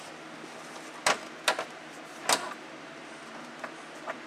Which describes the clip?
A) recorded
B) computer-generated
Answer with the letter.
A